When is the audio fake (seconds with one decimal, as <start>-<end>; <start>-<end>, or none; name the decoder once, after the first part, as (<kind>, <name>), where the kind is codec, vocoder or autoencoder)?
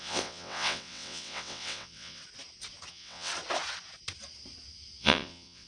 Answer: 0.0-2.2 (vocoder, WaveNeXt); 2.9-3.3; 5.0-5.7